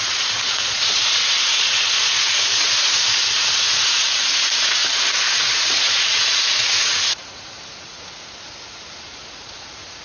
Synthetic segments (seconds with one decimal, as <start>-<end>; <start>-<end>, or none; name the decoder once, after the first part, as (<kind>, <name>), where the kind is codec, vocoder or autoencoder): 0.0-4.8 (vocoder, Vocos); 5.3-10.0